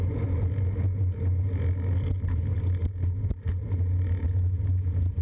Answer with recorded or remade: recorded